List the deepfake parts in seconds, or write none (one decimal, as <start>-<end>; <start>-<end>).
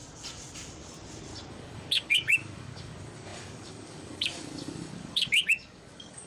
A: 1.5-6.3